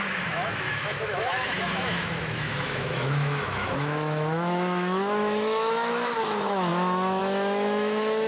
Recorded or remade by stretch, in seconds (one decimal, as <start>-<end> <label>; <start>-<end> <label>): 0.0-8.3 remade